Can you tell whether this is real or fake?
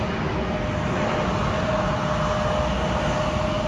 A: real